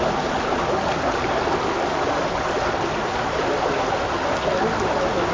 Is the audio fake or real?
real